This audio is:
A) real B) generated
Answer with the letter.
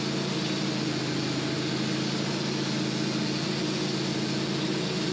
A